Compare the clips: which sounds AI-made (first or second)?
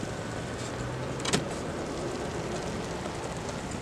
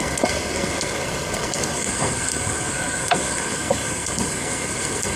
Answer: second